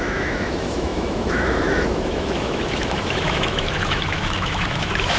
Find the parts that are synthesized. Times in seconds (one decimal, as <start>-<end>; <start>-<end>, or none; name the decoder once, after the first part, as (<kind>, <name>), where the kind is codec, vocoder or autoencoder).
0.0-5.2 (autoencoder, DAC-VAE)